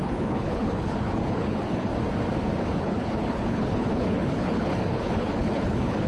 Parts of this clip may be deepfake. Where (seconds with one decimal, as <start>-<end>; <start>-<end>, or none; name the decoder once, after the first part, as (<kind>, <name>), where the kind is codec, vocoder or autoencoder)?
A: 0.0-1.9 (codec, HILCodec); 2.8-6.1